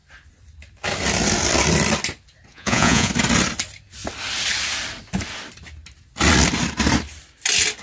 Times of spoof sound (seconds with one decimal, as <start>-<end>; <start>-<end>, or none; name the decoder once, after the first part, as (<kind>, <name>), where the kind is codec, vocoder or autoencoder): 2.5-3.1 (vocoder, Vocos)